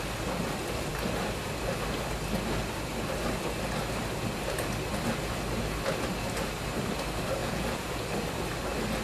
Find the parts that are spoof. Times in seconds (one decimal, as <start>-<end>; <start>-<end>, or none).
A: 7.4-8.1